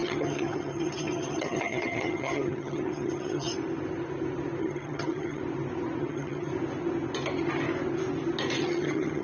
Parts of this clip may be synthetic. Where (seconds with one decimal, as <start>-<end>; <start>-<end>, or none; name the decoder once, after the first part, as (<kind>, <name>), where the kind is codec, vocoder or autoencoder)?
0.0-3.5 (vocoder, HiFi-GAN); 4.6-5.4; 6.0-6.5; 8.6-9.2